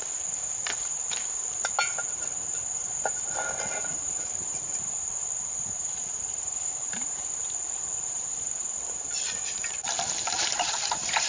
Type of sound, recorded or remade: remade